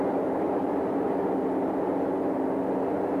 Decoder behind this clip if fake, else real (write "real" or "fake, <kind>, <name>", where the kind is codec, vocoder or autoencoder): real